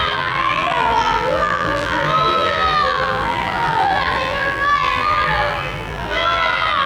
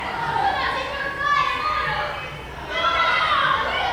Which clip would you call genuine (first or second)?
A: second